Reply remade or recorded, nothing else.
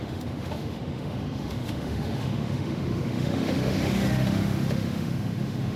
remade